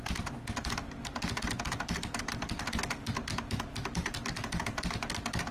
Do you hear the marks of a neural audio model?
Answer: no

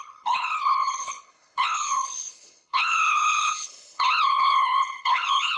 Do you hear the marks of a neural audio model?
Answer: yes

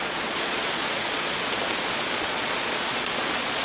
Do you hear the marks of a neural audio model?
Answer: yes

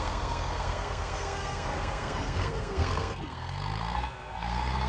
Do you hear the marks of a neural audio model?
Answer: yes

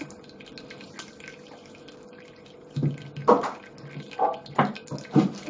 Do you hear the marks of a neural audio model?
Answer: no